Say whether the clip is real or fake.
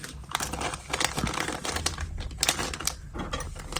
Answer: real